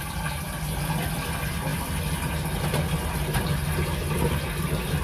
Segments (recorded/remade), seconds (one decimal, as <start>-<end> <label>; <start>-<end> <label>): 0.0-5.0 recorded

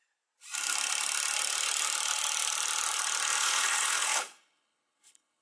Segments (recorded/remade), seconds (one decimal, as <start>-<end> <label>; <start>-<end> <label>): 0.0-3.4 recorded; 3.4-5.4 remade

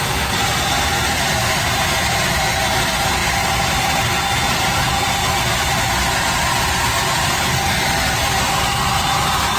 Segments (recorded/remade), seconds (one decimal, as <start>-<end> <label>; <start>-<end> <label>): 0.0-9.6 recorded

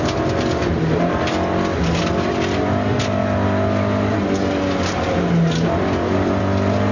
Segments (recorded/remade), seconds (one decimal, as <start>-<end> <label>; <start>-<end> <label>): 0.0-6.9 recorded

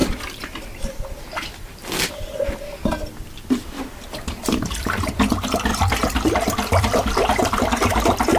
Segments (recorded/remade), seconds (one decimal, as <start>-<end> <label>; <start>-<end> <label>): 0.0-5.0 remade; 5.0-5.7 recorded; 5.7-7.6 remade; 7.6-8.4 recorded